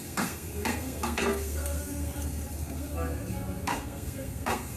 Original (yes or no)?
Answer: no